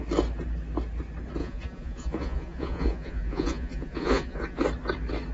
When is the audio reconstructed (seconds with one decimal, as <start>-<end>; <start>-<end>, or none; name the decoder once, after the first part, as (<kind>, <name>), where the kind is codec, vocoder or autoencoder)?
1.4-4.6 (vocoder, Vocos)